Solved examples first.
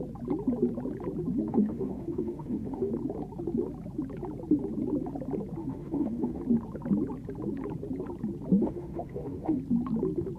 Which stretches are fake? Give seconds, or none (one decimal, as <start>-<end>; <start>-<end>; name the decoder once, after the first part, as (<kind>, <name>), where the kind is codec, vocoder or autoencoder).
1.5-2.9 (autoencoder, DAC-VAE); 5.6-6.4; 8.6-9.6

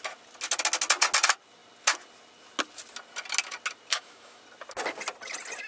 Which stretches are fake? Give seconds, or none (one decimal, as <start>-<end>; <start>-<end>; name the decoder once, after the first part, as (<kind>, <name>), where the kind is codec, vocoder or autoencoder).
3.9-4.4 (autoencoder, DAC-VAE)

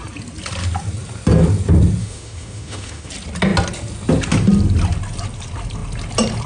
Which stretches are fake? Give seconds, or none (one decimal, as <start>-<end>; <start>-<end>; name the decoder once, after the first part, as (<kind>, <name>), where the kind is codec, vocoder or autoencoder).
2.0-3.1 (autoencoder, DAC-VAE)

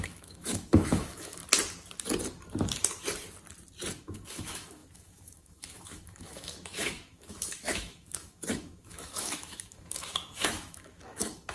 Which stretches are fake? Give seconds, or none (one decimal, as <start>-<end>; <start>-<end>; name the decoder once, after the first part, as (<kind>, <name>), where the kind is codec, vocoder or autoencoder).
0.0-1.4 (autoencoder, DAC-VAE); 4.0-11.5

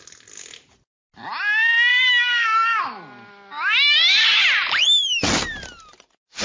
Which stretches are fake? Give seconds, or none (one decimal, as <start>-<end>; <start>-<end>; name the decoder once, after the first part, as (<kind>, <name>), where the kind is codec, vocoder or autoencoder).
1.9-2.8 (autoencoder, DAC-VAE)